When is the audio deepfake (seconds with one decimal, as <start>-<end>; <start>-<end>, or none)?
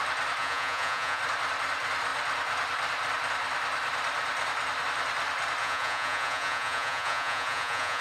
0.4-1.2; 5.6-8.0